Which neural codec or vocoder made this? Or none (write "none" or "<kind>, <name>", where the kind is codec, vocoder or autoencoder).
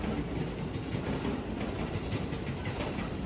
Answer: none